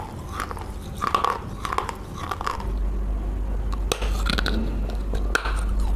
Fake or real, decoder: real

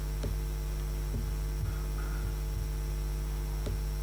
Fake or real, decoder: real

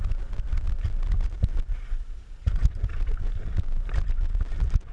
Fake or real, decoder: real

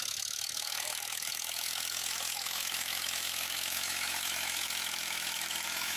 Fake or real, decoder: fake, autoencoder, DAC-VAE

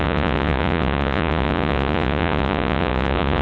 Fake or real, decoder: fake, vocoder, Vocos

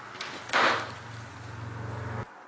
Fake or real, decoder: real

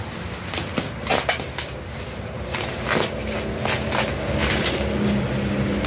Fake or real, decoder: real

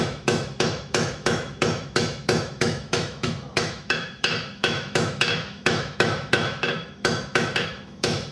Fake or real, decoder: fake, autoencoder, DAC-VAE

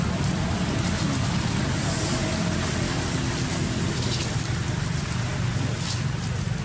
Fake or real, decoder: real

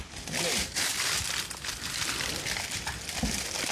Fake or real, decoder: real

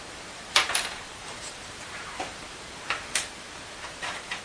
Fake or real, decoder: fake, vocoder, BigVGAN v2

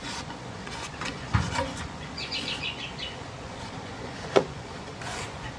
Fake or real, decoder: fake, vocoder, Vocos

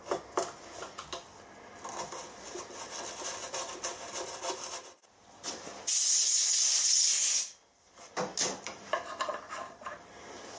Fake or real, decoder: real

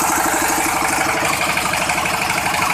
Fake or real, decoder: fake, vocoder, BigVGAN v2